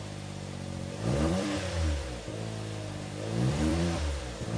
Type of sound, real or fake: fake